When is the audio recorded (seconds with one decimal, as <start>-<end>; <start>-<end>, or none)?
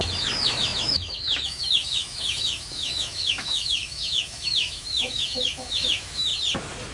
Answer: 6.3-6.9